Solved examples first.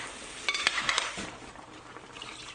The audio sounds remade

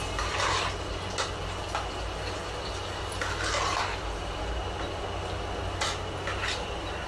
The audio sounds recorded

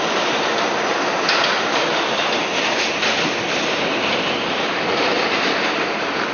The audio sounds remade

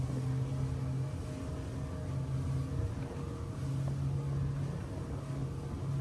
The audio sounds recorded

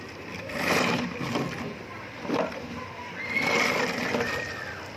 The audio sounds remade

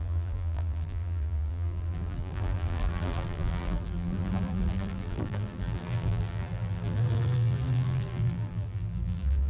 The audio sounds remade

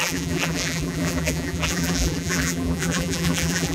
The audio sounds remade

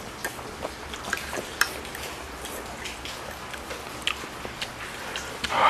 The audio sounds recorded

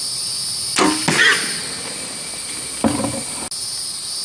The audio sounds recorded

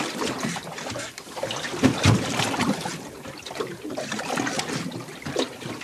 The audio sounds recorded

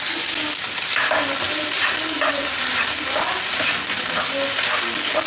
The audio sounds recorded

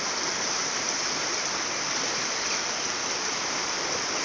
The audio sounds recorded